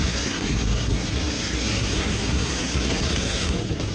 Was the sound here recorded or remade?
remade